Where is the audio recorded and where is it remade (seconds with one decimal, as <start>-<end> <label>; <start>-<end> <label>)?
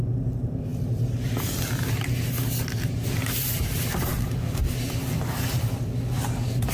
0.0-6.7 recorded